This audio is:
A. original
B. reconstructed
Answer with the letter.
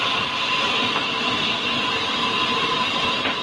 A